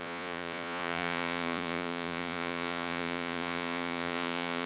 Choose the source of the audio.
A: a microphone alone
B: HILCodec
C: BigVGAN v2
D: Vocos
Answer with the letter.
D